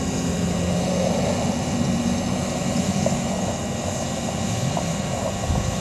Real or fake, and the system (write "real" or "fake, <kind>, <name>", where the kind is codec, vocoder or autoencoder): real